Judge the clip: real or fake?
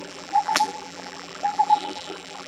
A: fake